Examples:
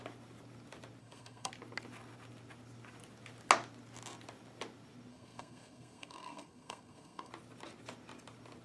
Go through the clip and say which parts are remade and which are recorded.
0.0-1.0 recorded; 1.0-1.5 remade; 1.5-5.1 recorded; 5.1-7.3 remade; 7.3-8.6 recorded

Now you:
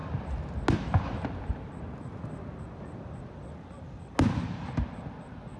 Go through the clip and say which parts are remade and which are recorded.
0.0-5.6 recorded

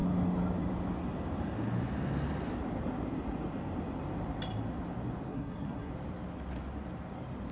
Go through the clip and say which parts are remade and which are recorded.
0.0-5.3 recorded; 5.3-5.9 remade; 5.9-7.5 recorded

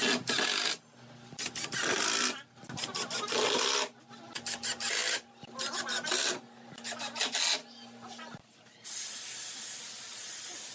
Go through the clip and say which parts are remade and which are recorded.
0.0-10.7 recorded

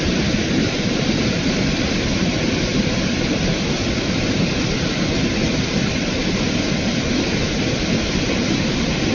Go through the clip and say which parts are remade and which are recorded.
0.0-9.1 recorded

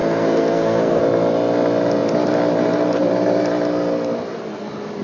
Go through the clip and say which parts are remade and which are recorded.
0.0-1.0 remade; 1.0-5.0 recorded

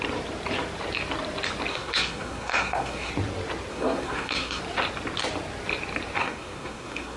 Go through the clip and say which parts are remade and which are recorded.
0.0-1.7 recorded; 1.7-3.1 remade; 3.1-3.7 recorded; 3.7-4.6 remade; 4.6-6.2 recorded; 6.2-7.2 remade